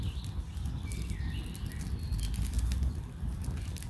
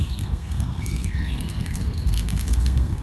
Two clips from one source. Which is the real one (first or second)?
first